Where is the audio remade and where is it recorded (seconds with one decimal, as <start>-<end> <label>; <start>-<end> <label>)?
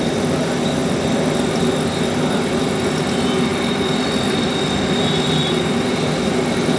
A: 0.0-6.8 recorded